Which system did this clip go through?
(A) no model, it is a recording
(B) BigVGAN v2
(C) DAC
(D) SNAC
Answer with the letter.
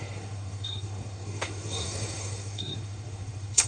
D